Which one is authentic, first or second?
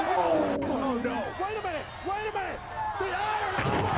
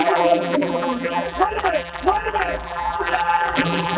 first